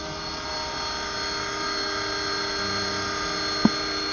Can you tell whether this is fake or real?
real